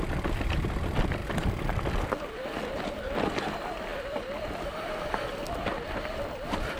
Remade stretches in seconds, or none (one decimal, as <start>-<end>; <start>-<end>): 1.2-2.5; 3.9-4.7